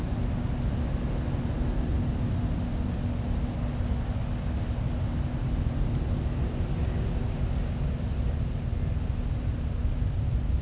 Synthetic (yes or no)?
no